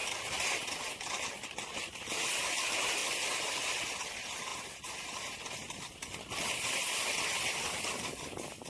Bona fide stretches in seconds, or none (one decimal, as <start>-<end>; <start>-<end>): 0.0-8.7